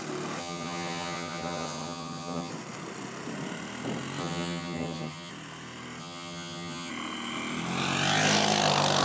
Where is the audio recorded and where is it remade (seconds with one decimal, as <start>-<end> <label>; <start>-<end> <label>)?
0.0-0.4 recorded; 0.4-2.5 remade; 2.5-4.2 recorded; 4.2-5.3 remade; 5.3-6.0 recorded; 6.0-6.9 remade; 6.9-9.0 recorded